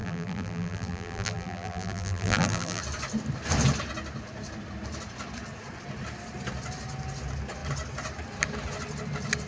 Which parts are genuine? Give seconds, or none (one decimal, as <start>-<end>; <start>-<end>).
2.8-9.5